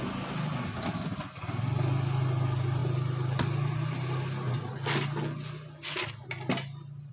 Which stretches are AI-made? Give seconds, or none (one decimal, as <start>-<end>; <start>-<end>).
none